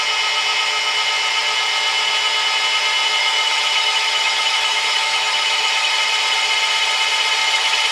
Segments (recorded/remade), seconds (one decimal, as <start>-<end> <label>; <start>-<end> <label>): 0.0-3.2 recorded; 3.2-5.9 remade; 5.9-7.4 recorded; 7.4-7.9 remade